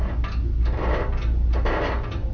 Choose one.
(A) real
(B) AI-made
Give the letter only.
A